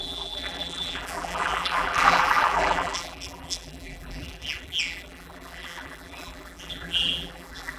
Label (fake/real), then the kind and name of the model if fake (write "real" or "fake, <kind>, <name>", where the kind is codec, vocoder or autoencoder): fake, vocoder, BigVGAN v2